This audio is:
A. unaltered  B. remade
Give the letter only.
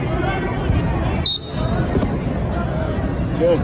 A